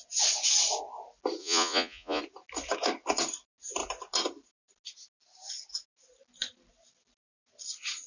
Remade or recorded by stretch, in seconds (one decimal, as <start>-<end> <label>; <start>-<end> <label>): 0.0-1.4 recorded; 1.4-2.2 remade; 2.2-8.1 recorded